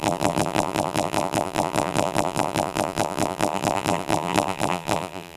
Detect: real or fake fake